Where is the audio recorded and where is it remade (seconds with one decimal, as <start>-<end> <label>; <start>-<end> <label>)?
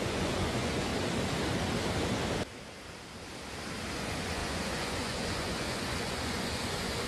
0.0-0.9 remade; 0.9-3.9 recorded; 3.9-7.1 remade